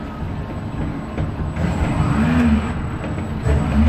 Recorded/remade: recorded